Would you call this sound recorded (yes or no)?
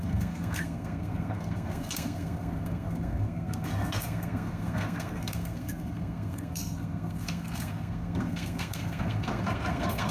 no